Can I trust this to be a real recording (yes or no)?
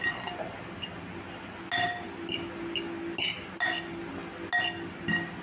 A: yes